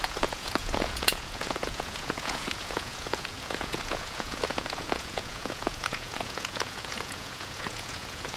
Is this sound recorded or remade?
remade